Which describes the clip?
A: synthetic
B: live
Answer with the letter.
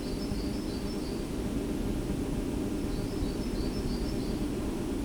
B